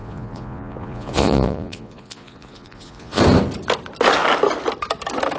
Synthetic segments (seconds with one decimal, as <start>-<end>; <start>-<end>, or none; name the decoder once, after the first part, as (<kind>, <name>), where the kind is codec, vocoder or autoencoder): 0.0-3.2 (vocoder, Vocos)